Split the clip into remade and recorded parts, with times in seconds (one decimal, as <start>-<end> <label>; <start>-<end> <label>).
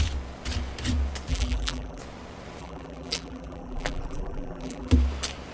0.0-1.3 recorded; 1.3-2.0 remade; 2.0-2.6 recorded; 2.6-4.9 remade; 4.9-5.5 recorded